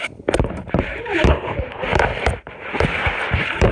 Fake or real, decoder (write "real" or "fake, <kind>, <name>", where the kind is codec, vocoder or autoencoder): fake, vocoder, BigVGAN v2